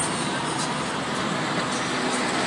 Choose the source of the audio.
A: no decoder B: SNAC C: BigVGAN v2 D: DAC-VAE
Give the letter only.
A